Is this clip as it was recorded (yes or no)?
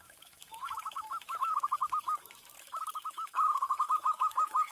no